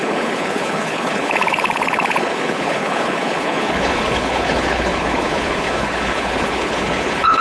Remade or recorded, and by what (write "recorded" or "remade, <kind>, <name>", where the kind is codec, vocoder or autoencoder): remade, codec, HILCodec